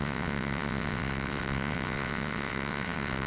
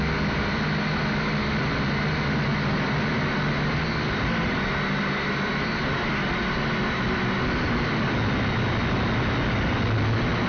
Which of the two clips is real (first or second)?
second